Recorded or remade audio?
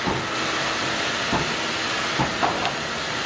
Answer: recorded